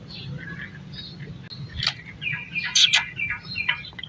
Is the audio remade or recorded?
recorded